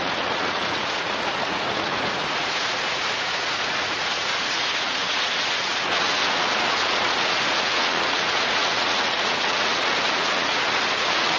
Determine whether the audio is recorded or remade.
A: remade